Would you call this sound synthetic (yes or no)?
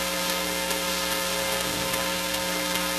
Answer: yes